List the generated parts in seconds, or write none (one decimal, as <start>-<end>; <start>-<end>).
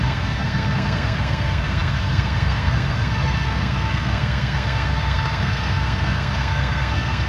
0.0-7.3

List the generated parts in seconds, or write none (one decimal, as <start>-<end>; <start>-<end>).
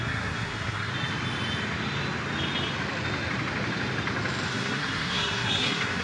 0.0-0.9; 4.5-6.0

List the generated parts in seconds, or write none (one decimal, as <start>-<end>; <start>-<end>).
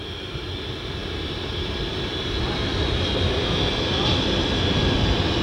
none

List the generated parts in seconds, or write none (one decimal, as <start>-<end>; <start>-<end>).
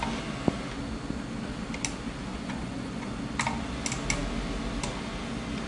2.3-3.1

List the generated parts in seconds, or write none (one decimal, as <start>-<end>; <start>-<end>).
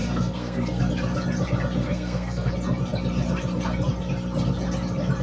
0.0-0.8; 1.8-2.5